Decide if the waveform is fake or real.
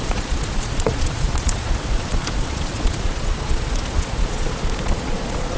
fake